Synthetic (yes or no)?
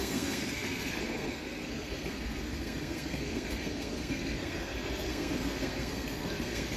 yes